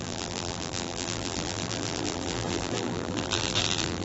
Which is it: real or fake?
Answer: fake